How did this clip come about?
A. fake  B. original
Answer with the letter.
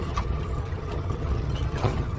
A